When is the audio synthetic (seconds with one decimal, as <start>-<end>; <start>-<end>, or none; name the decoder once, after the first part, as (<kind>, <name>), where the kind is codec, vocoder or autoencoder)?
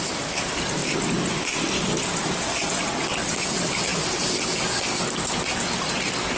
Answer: none